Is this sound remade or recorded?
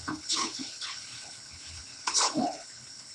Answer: remade